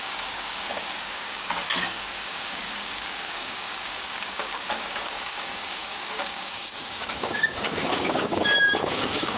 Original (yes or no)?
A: no